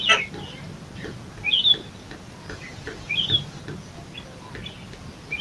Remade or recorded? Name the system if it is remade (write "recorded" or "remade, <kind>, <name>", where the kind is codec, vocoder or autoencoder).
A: recorded